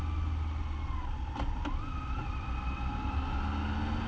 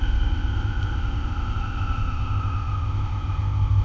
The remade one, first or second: second